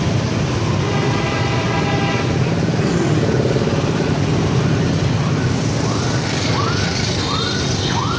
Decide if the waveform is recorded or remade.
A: recorded